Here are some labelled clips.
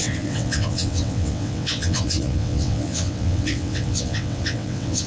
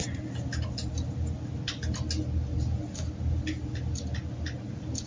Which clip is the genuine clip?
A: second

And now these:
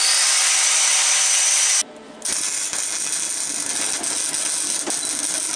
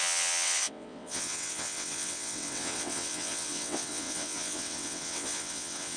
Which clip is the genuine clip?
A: first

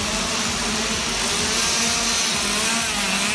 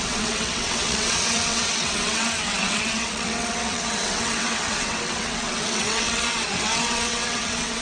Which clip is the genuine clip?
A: first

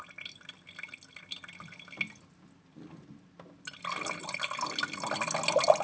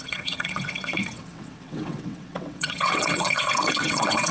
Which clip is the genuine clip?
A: first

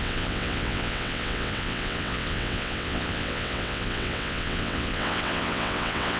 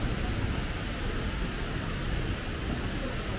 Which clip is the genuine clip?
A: second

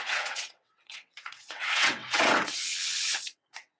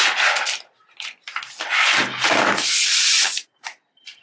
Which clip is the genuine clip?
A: second